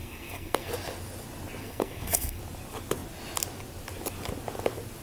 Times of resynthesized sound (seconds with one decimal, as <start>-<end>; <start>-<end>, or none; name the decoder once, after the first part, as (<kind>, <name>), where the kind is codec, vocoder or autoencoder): 0.0-0.7 (codec, SNAC); 1.6-2.4